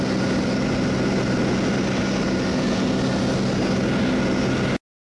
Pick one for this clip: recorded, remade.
recorded